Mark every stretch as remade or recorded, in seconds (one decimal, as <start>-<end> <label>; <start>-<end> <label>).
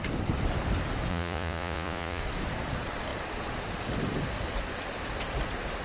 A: 0.0-1.1 recorded; 1.1-2.2 remade; 2.2-5.8 recorded